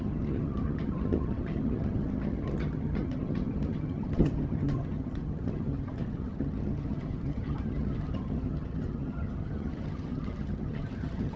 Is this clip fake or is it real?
fake